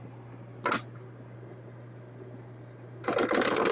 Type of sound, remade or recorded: recorded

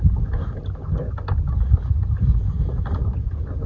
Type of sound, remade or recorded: recorded